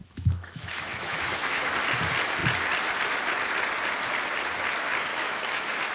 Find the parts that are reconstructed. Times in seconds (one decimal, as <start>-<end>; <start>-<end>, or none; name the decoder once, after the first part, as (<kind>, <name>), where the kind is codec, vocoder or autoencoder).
0.0-1.7 (autoencoder, DAC-VAE); 5.1-5.9